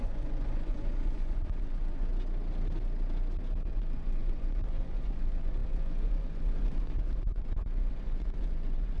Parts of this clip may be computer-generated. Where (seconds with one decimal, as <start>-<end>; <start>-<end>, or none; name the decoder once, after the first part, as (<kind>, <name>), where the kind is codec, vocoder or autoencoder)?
0.0-2.1 (vocoder, Vocos); 3.7-9.0

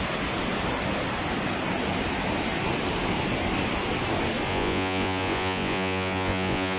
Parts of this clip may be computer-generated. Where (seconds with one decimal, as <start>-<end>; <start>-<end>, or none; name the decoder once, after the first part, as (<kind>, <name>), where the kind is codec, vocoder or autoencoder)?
4.5-6.8 (vocoder, Vocos)

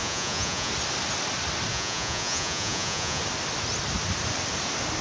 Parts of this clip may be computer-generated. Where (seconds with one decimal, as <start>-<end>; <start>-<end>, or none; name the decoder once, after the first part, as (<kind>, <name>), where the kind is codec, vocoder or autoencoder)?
0.0-0.7 (vocoder, Vocos); 1.7-3.2